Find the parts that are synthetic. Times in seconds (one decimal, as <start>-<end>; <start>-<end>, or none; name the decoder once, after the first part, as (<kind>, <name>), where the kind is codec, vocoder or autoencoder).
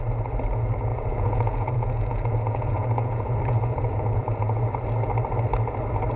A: 0.9-4.6 (vocoder, Vocos)